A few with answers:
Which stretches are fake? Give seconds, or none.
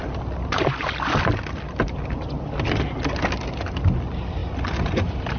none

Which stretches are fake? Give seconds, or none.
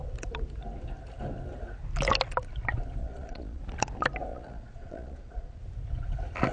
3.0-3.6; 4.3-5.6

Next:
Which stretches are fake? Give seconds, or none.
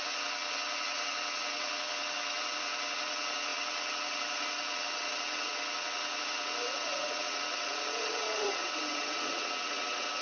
0.0-10.2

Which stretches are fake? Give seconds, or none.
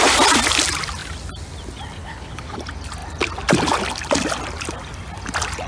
2.0-2.6